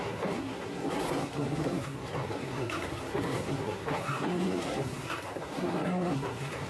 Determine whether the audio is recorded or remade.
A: remade